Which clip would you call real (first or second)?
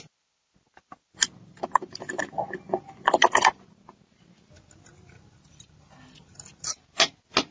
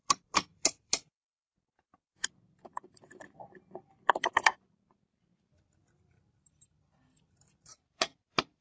first